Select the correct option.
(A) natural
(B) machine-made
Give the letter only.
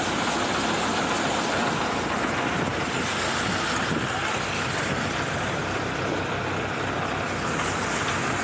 A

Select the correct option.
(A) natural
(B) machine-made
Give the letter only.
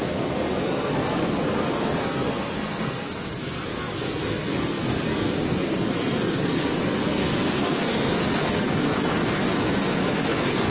B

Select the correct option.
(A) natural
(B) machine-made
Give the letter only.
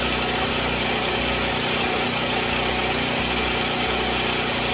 A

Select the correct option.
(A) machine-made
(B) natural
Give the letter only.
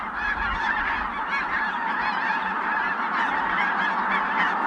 B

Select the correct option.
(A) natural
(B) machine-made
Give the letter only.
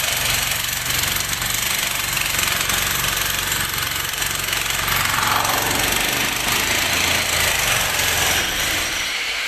B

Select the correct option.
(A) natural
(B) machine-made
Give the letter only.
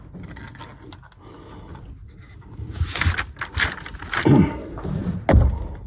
A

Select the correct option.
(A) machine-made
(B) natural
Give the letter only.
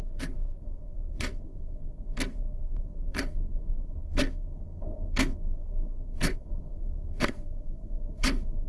A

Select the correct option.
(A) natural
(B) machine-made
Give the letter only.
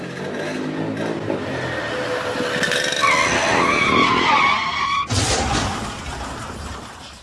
A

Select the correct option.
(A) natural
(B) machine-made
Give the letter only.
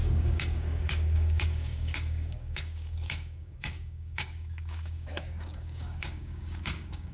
B